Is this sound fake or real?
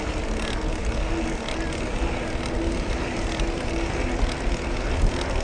real